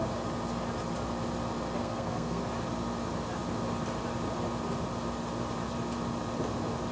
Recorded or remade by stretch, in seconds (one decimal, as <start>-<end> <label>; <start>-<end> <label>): 0.0-1.8 recorded; 1.8-2.4 remade; 2.4-6.9 recorded